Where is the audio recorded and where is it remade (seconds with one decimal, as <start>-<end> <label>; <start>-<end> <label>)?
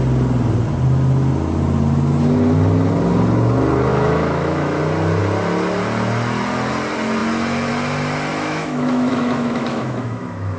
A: 0.0-3.9 recorded; 3.9-4.8 remade; 4.8-8.3 recorded; 8.3-10.6 remade